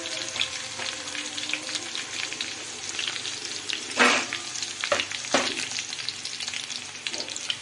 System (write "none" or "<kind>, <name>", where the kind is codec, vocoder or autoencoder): none